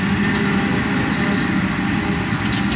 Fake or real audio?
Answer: real